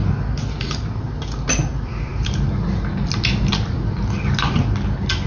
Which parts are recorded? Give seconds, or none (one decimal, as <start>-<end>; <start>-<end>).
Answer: 0.0-5.3